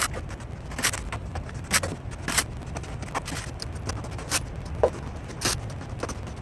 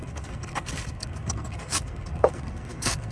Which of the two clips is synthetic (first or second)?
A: second